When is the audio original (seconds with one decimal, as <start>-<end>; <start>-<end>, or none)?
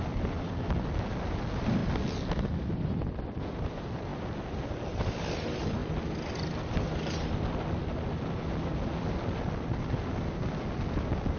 0.0-11.4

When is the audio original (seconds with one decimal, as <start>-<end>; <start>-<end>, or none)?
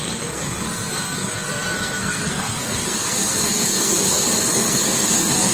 none